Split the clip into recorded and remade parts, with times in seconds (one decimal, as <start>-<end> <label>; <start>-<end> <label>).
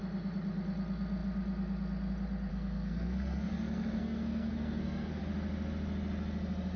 0.0-2.5 recorded; 2.5-5.2 remade; 5.2-6.8 recorded